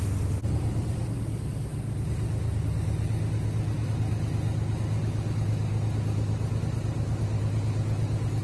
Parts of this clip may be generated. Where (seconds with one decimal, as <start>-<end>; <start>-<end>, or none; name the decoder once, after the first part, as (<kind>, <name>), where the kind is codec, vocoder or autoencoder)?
none